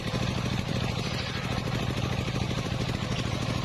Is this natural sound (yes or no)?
no